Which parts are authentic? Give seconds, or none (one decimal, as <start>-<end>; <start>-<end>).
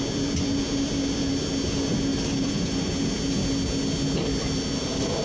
0.0-2.1; 2.9-5.2